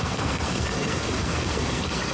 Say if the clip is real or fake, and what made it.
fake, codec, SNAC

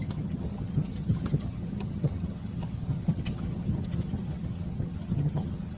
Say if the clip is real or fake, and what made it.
fake, vocoder, HiFi-GAN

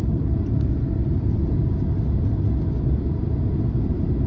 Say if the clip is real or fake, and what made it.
real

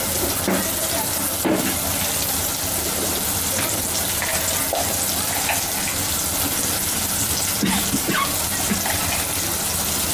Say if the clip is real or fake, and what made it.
real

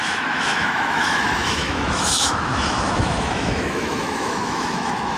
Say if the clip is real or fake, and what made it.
fake, autoencoder, DAC-VAE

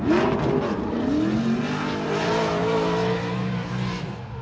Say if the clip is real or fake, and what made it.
real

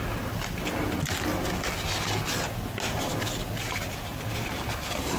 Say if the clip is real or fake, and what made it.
real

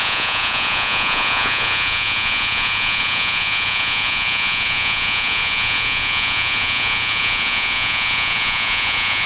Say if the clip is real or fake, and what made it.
fake, vocoder, Vocos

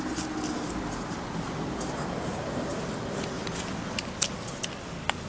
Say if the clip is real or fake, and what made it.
real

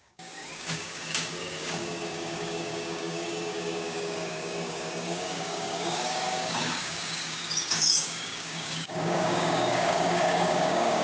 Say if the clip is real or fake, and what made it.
fake, codec, DAC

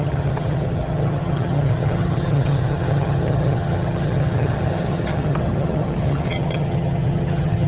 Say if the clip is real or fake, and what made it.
fake, vocoder, HiFi-GAN